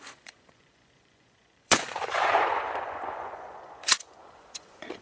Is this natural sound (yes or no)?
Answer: no